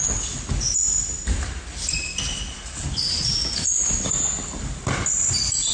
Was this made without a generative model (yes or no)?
yes